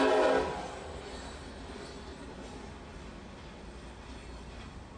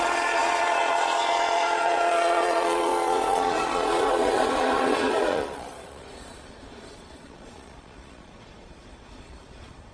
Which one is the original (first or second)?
first